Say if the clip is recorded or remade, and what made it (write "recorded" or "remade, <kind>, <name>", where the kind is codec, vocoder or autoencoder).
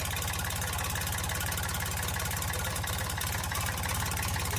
recorded